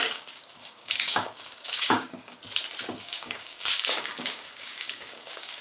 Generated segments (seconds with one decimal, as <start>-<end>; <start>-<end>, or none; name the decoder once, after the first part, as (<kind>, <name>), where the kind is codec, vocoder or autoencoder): 0.0-2.4 (codec, DAC); 3.0-5.6